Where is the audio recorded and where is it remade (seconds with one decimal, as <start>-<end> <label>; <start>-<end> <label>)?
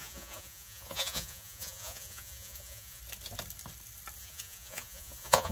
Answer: 0.0-3.0 remade; 3.0-4.2 recorded; 4.2-5.5 remade